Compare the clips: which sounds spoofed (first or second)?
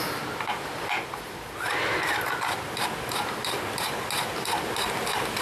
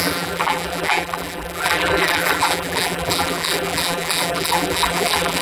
second